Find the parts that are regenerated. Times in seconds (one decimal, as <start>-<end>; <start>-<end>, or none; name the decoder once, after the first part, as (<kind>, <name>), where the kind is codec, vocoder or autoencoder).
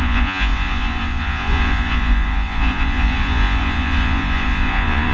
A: 0.0-5.1 (vocoder, Vocos)